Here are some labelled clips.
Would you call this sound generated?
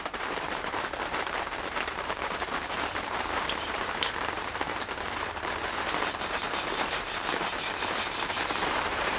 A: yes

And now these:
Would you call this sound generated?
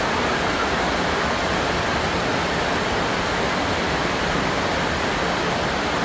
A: no